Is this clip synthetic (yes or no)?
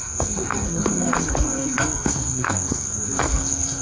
yes